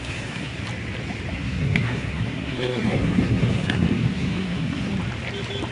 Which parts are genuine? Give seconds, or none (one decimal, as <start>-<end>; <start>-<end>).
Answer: 0.6-1.3; 4.9-5.7